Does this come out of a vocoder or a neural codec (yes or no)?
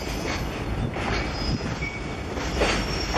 no